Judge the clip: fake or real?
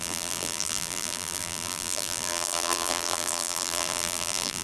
fake